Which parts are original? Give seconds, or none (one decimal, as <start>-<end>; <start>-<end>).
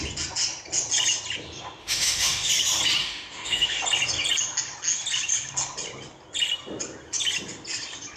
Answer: 0.0-1.8; 2.5-3.0; 3.8-8.2